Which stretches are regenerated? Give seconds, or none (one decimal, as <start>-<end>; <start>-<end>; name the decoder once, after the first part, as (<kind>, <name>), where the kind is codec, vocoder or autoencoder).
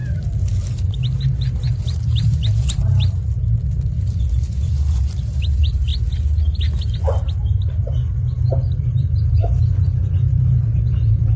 0.7-3.3 (vocoder, BigVGAN v2); 4.2-5.9; 8.9-11.4